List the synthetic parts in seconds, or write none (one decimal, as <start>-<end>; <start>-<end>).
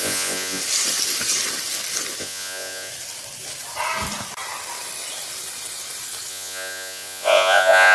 0.0-0.6; 2.2-2.9; 6.3-7.9